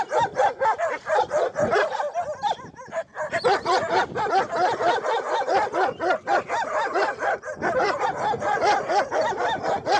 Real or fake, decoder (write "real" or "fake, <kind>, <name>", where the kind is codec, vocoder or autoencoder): fake, vocoder, BigVGAN v2